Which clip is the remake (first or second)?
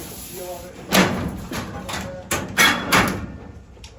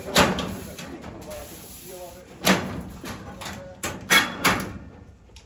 second